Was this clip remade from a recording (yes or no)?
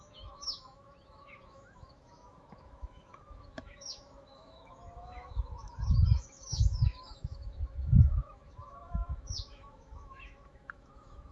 yes